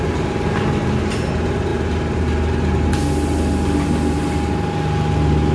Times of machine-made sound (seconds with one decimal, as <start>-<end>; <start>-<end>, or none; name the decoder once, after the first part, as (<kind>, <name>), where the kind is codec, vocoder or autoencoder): none